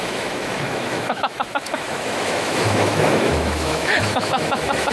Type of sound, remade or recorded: remade